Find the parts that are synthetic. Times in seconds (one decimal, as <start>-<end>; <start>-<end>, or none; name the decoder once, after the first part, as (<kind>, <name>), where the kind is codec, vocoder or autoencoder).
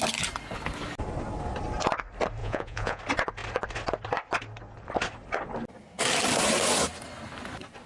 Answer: 2.4-3.0 (vocoder, Vocos)